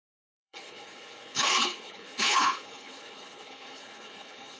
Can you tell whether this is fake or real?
fake